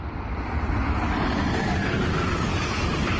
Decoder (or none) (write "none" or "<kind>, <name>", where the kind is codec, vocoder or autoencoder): none